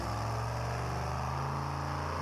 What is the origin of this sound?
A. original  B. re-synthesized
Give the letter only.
A